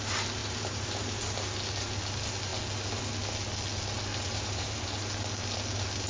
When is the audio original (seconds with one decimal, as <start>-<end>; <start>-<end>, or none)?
0.0-0.4; 1.2-4.1; 4.8-6.1